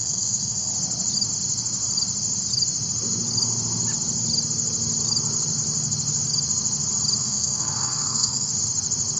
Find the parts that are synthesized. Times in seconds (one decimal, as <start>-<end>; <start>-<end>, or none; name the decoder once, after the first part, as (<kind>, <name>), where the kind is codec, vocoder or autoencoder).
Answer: 0.0-0.7 (codec, SNAC); 7.2-8.5